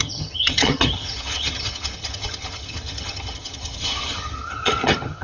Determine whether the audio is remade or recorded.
remade